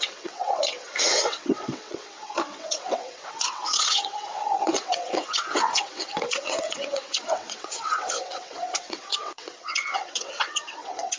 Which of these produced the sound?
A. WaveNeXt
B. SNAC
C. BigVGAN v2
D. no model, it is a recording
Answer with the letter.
A